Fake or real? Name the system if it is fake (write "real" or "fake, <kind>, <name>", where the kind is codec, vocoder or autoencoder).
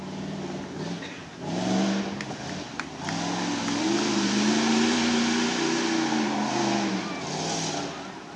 real